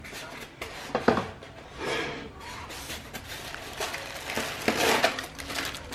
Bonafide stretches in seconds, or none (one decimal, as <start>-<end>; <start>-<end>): 0.0-1.7; 2.7-5.9